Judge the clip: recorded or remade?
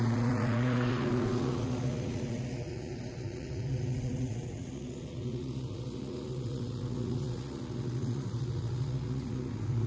remade